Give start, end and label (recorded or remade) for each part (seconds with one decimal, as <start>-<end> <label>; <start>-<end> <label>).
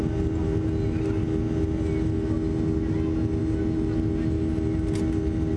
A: 0.0-5.6 recorded